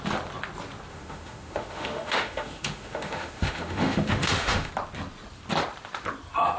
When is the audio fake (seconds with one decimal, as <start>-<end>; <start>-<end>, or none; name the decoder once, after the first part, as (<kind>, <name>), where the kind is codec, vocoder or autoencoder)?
0.9-4.7 (autoencoder, DAC-VAE)